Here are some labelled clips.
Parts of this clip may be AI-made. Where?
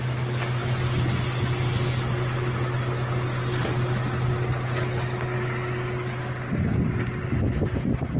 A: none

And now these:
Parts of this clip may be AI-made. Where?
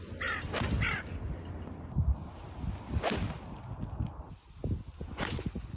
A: none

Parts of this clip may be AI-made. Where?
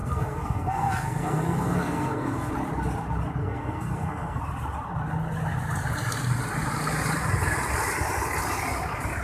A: 0.0-2.5 (codec, SNAC); 3.4-4.4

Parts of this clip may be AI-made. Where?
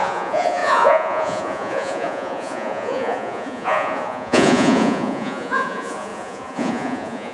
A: 0.0-7.3 (vocoder, Vocos)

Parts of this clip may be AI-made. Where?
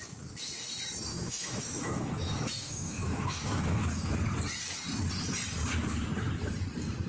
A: 1.1-4.1 (autoencoder, DAC-VAE)